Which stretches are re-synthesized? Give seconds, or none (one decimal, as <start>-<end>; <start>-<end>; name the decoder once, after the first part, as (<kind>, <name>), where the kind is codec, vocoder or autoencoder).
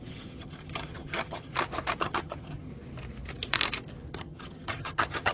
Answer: 0.0-1.5 (vocoder, HiFi-GAN); 2.0-2.7; 4.1-5.3